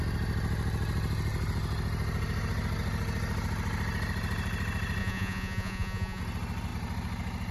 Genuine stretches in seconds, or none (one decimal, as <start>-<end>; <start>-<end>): 0.0-5.0; 6.2-7.5